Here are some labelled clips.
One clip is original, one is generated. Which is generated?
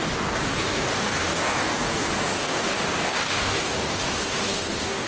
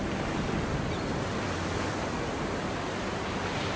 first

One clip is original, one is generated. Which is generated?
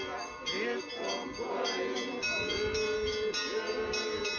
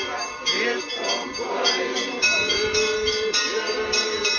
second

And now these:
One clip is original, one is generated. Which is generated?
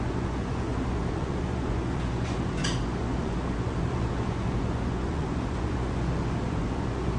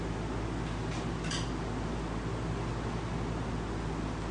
first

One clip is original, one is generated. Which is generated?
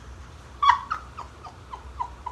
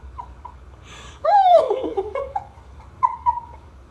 second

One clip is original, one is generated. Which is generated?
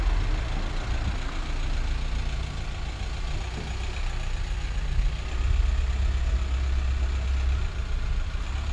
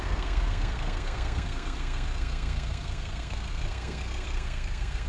second